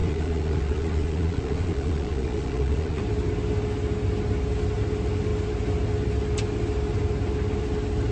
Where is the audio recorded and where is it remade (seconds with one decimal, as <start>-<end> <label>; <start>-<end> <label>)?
0.0-3.0 remade; 3.0-8.1 recorded